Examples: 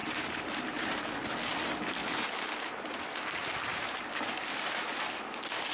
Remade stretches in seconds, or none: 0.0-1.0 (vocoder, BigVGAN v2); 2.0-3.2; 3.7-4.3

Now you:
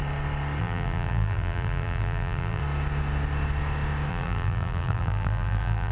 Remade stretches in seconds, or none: 0.6-2.6 (vocoder, BigVGAN v2); 4.1-5.9

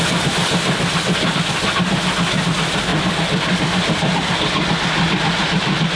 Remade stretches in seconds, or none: 2.9-4.3 (vocoder, BigVGAN v2)

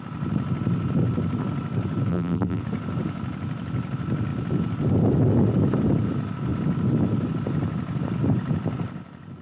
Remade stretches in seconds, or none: 2.1-2.6 (vocoder, BigVGAN v2)